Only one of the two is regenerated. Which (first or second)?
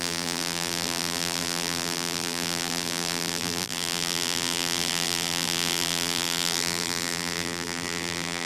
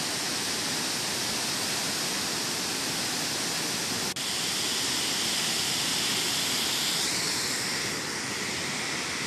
first